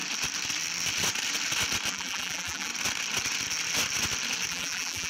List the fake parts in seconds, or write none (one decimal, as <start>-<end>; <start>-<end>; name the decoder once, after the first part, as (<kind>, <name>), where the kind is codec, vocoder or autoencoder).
1.9-2.7 (vocoder, BigVGAN v2); 4.5-5.1